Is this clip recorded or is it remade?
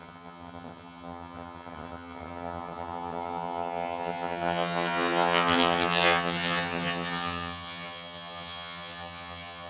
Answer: remade